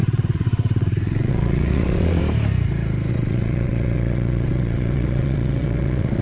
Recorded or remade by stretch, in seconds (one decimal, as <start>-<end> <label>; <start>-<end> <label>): 0.0-2.2 remade; 2.2-3.1 recorded; 3.1-6.2 remade